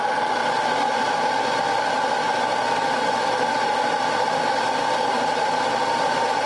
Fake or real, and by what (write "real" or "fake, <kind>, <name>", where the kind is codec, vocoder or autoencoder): real